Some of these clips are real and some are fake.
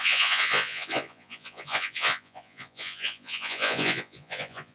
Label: fake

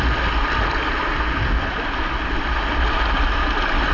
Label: real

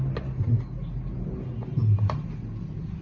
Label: real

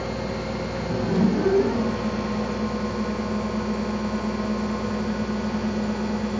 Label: real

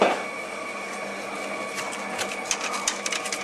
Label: real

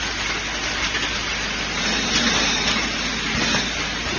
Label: real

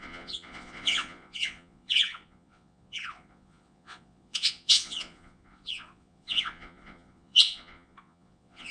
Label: fake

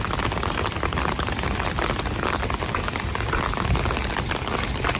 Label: real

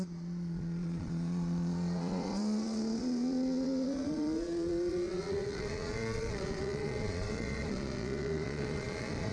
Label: fake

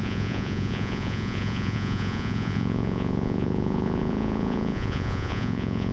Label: fake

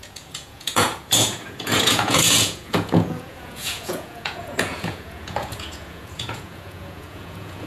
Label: fake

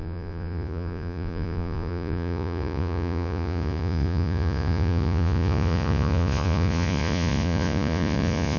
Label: fake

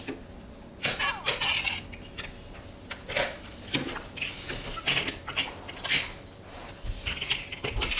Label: real